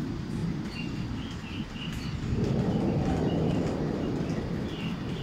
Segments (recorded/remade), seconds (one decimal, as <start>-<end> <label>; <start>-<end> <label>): 0.0-5.2 recorded